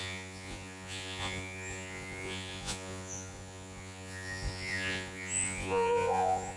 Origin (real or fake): fake